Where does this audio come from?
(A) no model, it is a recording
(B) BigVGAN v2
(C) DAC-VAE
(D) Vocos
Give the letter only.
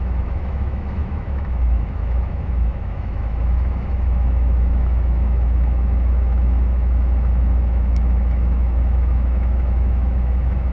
C